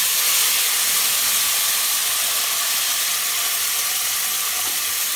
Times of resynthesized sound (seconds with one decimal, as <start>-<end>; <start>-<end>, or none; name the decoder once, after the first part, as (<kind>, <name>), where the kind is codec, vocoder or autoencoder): none